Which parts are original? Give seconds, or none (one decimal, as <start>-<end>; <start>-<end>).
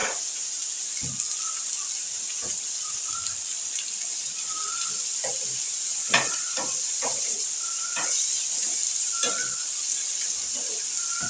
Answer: 0.8-2.0; 3.1-5.9; 8.8-11.3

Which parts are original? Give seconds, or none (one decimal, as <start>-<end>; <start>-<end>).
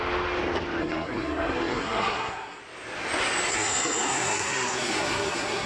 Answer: 0.0-0.8; 2.6-3.5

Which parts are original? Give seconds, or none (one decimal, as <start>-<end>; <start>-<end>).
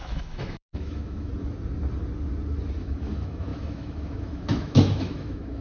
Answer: 1.3-2.8